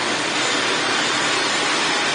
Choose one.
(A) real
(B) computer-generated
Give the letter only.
A